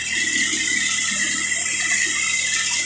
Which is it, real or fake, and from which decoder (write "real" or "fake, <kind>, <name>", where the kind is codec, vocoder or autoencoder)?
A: real